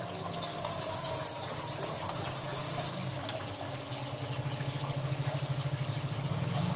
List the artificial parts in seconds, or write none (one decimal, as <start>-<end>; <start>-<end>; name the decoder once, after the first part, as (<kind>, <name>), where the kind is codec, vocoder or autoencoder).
0.5-1.1 (codec, DAC); 2.5-3.5